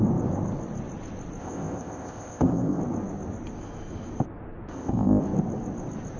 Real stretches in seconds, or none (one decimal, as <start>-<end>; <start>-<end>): 0.0-1.4; 2.8-4.7; 5.2-6.2